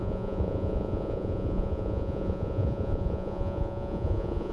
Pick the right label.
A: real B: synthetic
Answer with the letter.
B